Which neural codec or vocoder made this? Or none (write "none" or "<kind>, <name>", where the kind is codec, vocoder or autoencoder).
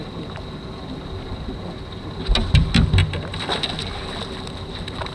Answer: none